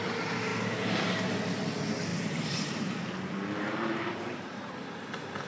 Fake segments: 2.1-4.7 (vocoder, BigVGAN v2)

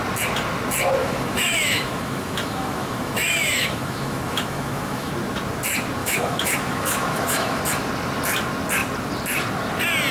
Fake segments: 1.0-5.1 (autoencoder, DAC-VAE); 6.0-7.6

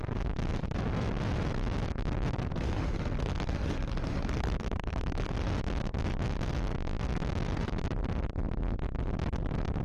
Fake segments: 2.5-5.3 (autoencoder, DAC-VAE)